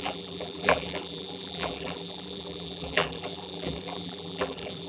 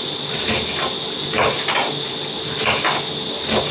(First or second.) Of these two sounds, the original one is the second